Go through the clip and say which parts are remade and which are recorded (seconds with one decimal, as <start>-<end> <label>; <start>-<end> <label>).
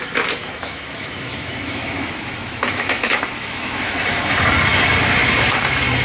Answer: 0.0-0.4 recorded; 0.4-4.0 remade; 4.0-6.0 recorded